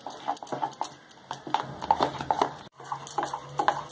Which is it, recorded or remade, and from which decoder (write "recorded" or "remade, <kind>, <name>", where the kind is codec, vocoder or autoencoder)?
recorded